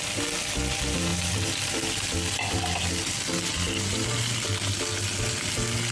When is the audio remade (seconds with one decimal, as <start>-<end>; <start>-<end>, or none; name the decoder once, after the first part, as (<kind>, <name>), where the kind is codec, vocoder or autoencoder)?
none